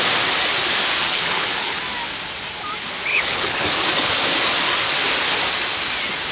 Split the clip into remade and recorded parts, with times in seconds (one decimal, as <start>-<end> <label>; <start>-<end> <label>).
0.0-1.0 recorded; 1.0-1.8 remade; 1.8-3.1 recorded; 3.1-4.1 remade; 4.1-6.3 recorded